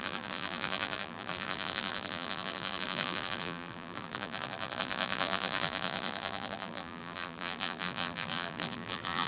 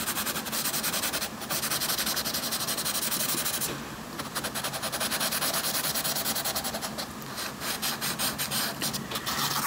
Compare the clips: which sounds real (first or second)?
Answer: second